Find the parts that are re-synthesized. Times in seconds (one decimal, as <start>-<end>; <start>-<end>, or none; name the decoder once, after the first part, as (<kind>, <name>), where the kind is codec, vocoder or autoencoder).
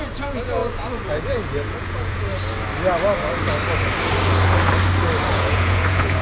0.0-0.6 (vocoder, Vocos); 1.1-2.3; 5.3-6.2